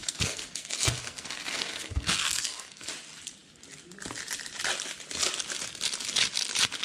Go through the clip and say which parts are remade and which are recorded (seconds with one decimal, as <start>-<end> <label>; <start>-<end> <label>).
0.0-2.9 remade; 2.9-6.8 recorded